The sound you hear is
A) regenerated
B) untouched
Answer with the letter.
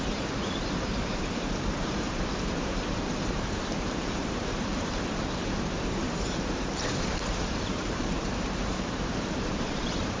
A